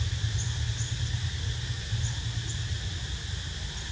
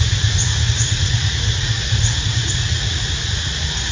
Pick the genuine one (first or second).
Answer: first